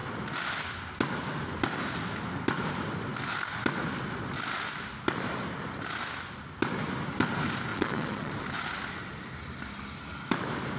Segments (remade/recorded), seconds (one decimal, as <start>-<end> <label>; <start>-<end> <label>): 0.0-7.7 recorded; 7.7-8.3 remade; 8.3-10.8 recorded